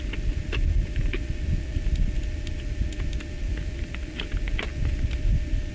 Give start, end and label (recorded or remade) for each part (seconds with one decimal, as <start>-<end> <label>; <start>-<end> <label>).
0.0-5.7 recorded